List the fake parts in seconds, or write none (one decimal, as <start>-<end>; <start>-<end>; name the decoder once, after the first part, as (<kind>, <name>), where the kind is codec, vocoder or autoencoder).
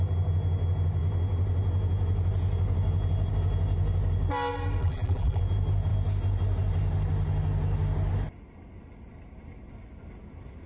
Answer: 4.8-5.4 (vocoder, BigVGAN v2)